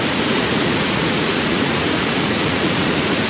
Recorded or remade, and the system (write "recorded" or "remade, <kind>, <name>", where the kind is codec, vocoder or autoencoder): remade, vocoder, Vocos